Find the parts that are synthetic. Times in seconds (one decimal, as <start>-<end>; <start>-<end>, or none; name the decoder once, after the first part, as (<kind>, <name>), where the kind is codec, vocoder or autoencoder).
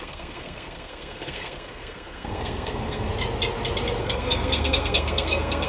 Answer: 0.0-3.1 (codec, SNAC); 4.0-5.7